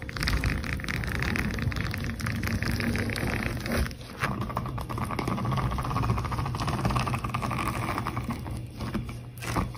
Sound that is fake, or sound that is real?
real